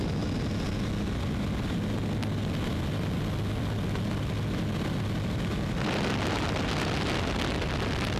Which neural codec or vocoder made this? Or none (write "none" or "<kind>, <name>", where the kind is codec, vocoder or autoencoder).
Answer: none